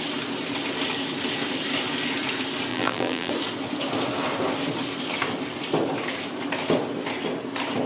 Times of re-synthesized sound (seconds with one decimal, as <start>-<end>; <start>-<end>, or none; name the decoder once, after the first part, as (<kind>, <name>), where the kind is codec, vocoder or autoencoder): 2.7-3.3 (vocoder, BigVGAN v2)